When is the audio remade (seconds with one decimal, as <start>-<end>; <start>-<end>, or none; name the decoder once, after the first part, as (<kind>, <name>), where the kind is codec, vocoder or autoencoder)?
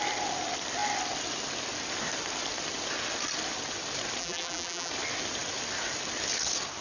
4.2-4.9 (vocoder, BigVGAN v2)